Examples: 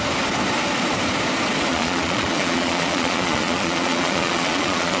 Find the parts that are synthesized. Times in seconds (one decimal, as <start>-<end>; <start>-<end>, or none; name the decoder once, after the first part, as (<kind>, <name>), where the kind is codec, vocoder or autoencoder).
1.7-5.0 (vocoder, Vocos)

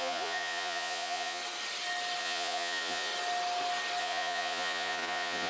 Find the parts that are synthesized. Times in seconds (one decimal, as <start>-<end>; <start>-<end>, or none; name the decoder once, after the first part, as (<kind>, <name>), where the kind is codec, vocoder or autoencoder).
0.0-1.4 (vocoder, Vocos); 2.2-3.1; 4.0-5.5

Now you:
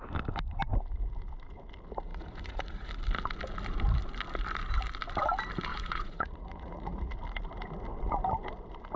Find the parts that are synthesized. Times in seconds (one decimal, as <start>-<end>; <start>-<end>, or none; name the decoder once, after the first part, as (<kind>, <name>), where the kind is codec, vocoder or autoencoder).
2.1-2.9 (vocoder, Vocos); 5.7-7.1

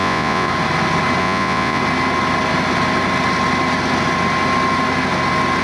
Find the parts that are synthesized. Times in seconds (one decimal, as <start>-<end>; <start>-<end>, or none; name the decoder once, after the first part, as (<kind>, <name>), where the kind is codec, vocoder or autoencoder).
0.0-0.5 (vocoder, Vocos); 1.2-1.8

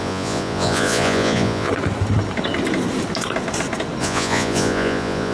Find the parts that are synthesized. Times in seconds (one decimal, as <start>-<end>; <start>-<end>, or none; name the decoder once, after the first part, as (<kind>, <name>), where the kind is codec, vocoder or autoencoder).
0.0-1.7 (vocoder, Vocos); 4.0-5.3

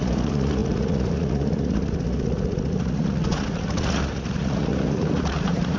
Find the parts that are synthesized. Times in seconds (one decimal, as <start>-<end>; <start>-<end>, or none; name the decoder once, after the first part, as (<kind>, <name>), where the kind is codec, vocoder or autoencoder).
0.0-5.8 (vocoder, Vocos)

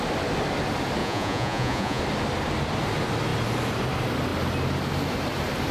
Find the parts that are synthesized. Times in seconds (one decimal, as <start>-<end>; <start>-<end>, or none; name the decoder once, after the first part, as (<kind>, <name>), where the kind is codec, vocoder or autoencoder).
1.0-2.0 (vocoder, Vocos)

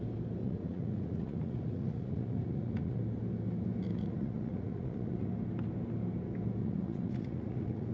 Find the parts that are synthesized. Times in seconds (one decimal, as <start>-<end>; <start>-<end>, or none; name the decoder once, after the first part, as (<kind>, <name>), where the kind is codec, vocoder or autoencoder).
0.4-3.0 (vocoder, Vocos); 3.9-5.3; 6.6-7.9